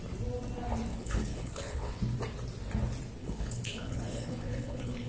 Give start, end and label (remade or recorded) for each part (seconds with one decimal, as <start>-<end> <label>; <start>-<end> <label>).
0.0-0.9 recorded; 0.9-2.0 remade; 2.0-3.2 recorded; 3.2-5.1 remade